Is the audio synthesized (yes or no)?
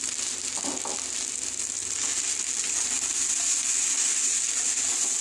no